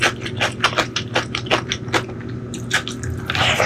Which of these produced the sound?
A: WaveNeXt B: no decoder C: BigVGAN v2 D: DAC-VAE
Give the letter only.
B